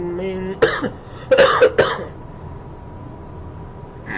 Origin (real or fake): real